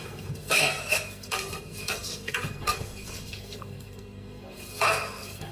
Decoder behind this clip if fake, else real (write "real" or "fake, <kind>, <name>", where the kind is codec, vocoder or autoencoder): fake, codec, SNAC